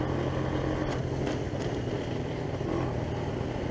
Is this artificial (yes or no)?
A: no